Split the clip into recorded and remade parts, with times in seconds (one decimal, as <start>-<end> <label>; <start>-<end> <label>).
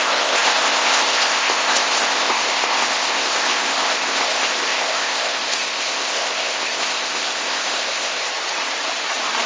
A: 0.0-8.2 remade; 8.2-9.5 recorded